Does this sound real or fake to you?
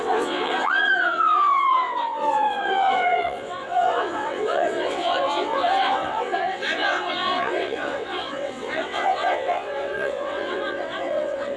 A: fake